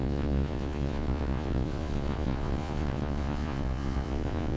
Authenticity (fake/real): fake